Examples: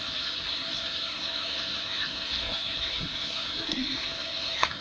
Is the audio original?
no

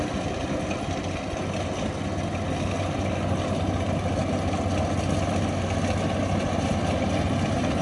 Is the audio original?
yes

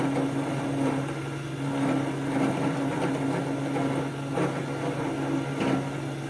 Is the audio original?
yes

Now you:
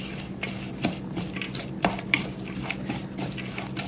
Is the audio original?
yes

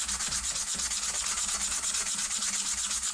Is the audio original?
yes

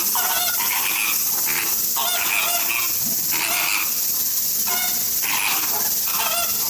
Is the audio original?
yes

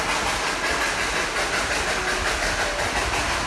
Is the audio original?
yes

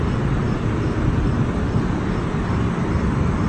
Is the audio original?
yes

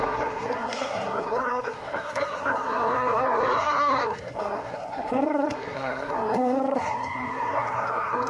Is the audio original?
no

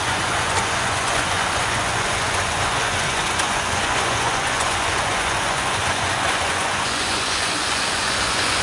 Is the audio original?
no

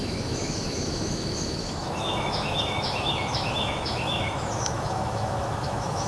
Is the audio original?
no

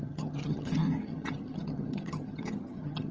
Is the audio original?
no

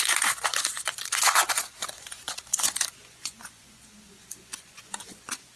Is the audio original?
no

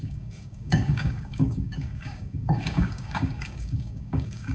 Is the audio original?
no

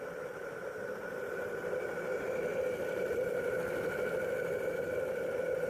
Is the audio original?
yes